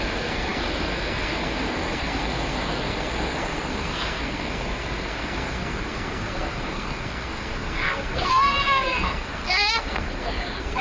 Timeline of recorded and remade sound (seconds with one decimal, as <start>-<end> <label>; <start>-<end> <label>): 0.0-10.8 remade